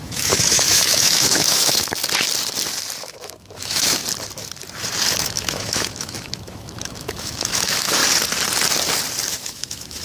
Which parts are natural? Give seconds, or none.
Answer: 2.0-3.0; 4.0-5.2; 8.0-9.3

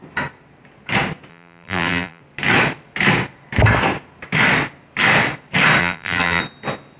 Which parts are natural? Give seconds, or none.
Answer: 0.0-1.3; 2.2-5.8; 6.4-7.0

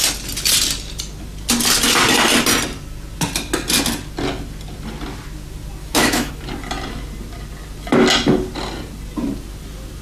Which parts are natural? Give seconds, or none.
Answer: 0.0-5.8; 6.3-10.0

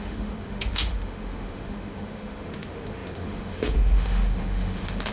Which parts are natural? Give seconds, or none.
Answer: none

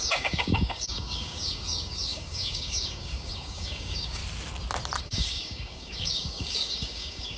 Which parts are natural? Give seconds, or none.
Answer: 4.2-5.0

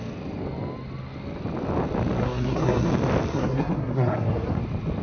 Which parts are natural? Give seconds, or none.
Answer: 0.0-2.2; 2.9-3.3; 4.6-5.0

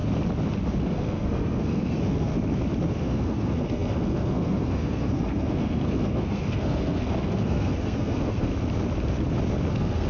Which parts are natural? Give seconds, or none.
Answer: 0.0-0.8; 2.3-2.9; 8.5-9.7